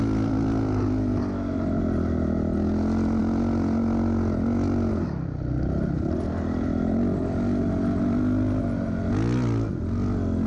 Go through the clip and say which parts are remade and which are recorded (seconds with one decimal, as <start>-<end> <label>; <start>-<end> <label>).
0.0-10.5 recorded